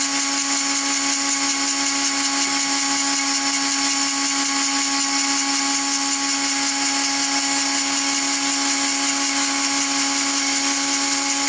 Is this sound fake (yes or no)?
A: no